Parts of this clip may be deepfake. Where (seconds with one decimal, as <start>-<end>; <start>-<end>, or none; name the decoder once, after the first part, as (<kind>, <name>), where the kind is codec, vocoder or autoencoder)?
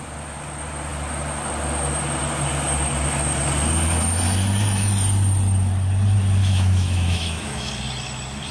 6.4-7.7 (autoencoder, DAC-VAE)